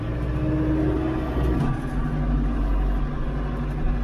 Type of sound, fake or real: real